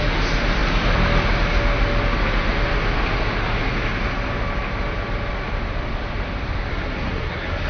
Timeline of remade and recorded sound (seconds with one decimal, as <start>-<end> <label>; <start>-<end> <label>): 0.0-6.7 recorded; 6.7-7.7 remade